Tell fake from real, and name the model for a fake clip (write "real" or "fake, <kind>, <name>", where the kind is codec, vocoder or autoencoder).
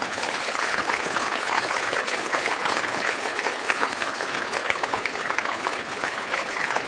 fake, codec, HILCodec